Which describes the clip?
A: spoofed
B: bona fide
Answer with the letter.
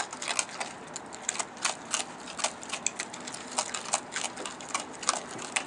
B